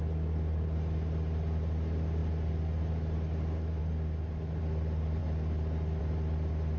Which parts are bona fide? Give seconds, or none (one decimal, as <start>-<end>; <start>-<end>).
0.0-6.8